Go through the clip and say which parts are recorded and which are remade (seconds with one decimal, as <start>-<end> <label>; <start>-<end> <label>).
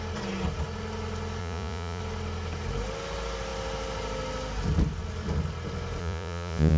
0.0-1.4 recorded; 1.4-2.0 remade; 2.0-6.0 recorded; 6.0-6.8 remade